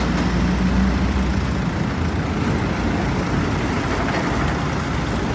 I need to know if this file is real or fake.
real